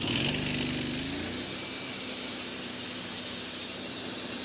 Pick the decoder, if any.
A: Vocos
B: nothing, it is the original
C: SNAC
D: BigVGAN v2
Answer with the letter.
B